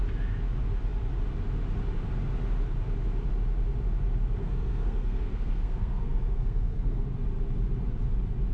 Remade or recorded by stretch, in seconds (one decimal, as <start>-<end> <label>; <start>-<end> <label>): 0.0-4.4 recorded; 4.4-7.0 remade; 7.0-8.5 recorded